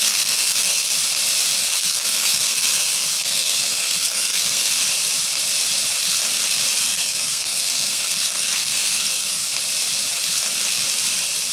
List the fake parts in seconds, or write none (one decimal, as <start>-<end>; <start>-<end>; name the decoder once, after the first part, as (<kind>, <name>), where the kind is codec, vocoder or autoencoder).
0.0-0.9 (codec, SNAC); 1.6-4.8; 6.8-9.5